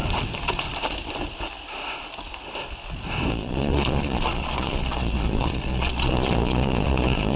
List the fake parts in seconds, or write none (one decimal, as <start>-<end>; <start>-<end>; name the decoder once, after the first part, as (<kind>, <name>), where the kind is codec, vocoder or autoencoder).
3.3-7.4 (vocoder, Vocos)